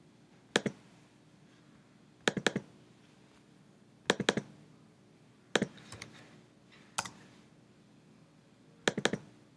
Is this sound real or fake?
real